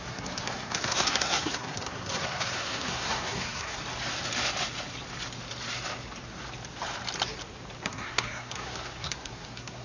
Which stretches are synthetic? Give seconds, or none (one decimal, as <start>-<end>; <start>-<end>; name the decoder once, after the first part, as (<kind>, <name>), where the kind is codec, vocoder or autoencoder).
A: 0.0-3.8 (codec, SNAC); 7.8-9.8